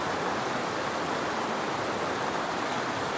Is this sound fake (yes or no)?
no